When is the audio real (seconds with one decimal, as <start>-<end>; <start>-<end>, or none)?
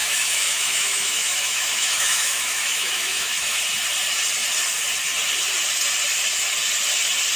3.6-7.4